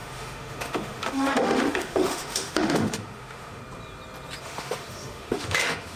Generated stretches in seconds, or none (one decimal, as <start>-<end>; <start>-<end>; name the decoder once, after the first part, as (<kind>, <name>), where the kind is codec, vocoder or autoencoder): 0.0-3.6 (autoencoder, DAC-VAE); 4.4-6.0